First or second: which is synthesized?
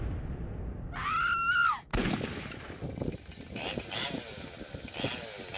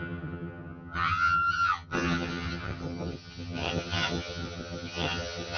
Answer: second